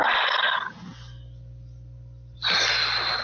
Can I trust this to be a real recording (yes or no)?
yes